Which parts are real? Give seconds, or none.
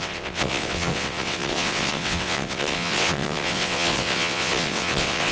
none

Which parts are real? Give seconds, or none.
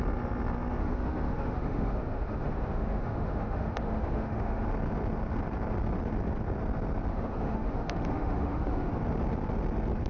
0.0-0.8; 4.7-7.1; 8.9-10.1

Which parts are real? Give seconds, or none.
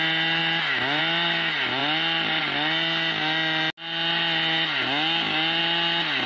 0.0-6.3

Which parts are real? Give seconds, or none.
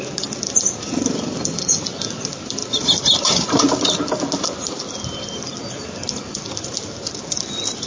0.0-7.9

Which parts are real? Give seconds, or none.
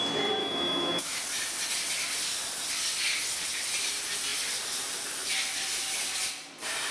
0.0-0.4; 1.2-6.9